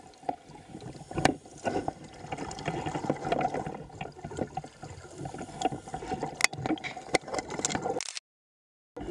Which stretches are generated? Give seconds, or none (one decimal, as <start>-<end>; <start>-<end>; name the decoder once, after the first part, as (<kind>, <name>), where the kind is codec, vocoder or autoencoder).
none